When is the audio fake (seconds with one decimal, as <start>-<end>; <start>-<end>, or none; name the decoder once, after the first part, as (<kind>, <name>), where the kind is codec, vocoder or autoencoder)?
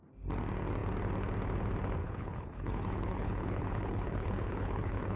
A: 2.0-5.2 (codec, HILCodec)